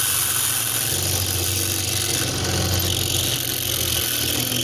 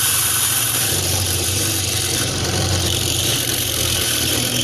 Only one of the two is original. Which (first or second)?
first